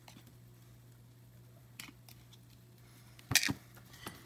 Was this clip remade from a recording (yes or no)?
no